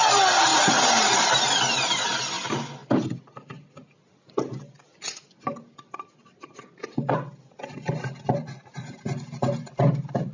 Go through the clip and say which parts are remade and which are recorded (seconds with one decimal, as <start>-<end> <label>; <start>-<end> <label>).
0.0-10.3 recorded

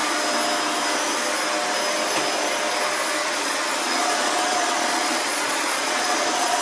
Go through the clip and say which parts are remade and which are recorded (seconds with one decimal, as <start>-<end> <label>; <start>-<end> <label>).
0.0-3.2 recorded; 3.2-6.6 remade